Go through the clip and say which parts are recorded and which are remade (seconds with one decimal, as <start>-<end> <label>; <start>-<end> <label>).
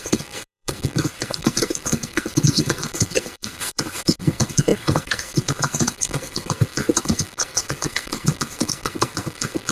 0.0-9.7 remade